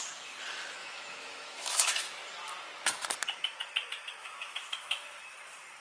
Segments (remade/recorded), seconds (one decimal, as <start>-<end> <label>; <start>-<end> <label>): 0.0-0.8 recorded; 0.8-2.3 remade; 2.3-4.2 recorded; 4.2-5.2 remade; 5.2-5.8 recorded